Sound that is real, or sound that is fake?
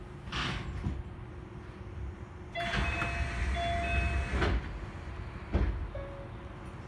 real